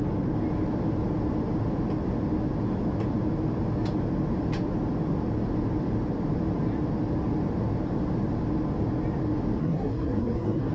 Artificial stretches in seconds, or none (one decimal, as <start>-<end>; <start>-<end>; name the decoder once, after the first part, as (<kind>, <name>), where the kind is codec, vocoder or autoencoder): 9.6-10.7 (codec, SNAC)